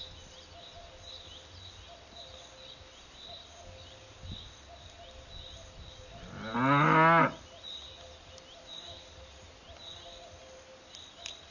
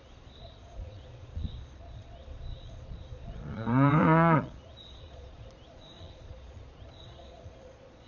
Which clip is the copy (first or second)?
second